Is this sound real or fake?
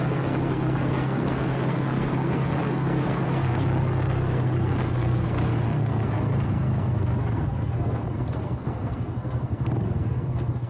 fake